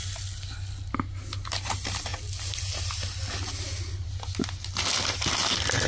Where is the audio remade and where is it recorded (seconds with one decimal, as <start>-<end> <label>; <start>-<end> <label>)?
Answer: 0.0-5.9 recorded